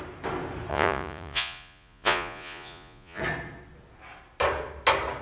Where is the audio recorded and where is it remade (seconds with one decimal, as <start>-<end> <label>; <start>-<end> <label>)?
0.0-0.7 recorded; 0.7-3.2 remade; 3.2-5.2 recorded